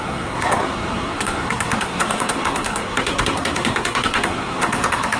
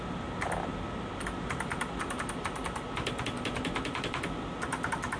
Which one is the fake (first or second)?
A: first